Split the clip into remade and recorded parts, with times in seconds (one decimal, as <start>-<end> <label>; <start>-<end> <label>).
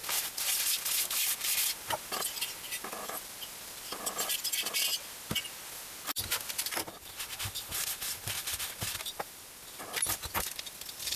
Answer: 0.0-4.9 remade; 4.9-6.6 recorded; 6.6-11.2 remade